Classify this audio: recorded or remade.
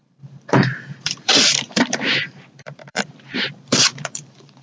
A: remade